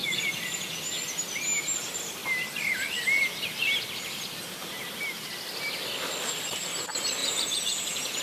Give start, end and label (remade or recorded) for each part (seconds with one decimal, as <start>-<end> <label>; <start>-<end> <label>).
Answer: 0.0-0.8 remade; 0.8-7.2 recorded; 7.2-8.2 remade